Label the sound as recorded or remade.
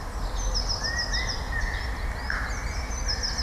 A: recorded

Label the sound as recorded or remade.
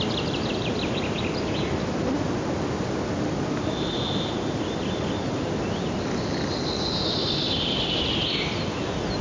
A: recorded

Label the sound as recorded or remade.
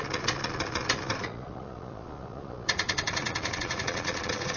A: remade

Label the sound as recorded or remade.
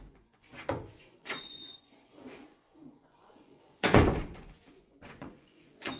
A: remade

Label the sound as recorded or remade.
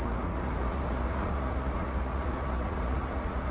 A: remade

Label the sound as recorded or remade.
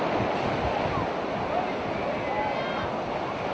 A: recorded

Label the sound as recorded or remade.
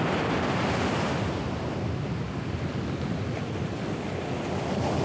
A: recorded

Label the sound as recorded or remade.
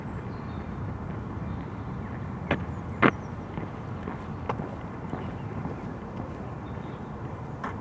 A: recorded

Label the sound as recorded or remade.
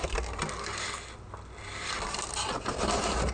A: recorded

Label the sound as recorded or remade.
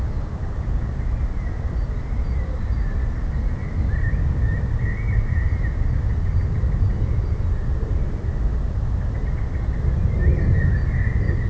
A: recorded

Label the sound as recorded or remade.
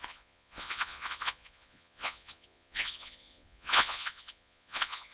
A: remade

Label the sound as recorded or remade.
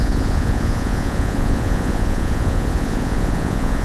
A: remade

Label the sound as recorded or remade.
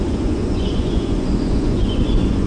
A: remade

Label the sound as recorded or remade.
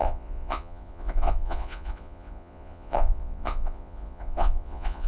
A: remade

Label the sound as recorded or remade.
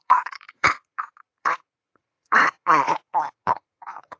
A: remade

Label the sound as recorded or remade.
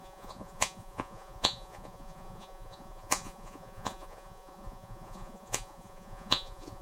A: remade